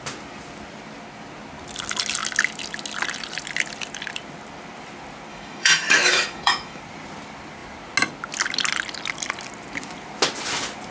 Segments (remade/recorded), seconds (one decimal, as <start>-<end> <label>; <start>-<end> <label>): 0.0-5.3 recorded; 5.3-6.8 remade; 6.8-10.9 recorded